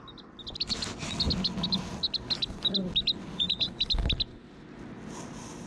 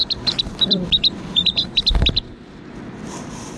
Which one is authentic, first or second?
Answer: first